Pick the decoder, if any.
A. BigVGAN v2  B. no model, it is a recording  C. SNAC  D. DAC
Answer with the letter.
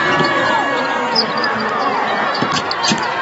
B